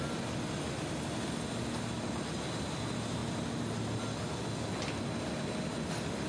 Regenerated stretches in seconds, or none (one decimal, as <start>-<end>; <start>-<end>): none